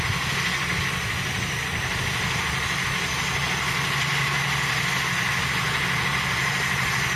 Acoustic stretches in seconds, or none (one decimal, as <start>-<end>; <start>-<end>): 0.0-7.2